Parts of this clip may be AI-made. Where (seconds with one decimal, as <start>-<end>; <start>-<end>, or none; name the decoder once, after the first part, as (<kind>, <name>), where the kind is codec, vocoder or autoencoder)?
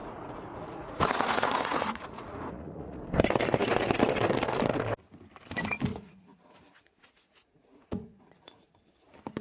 0.0-3.0 (vocoder, Vocos); 5.9-8.8